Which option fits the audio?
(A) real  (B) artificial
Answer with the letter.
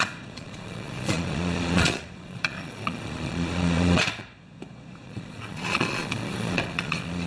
B